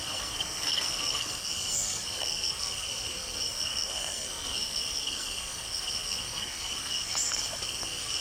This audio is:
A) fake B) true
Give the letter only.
A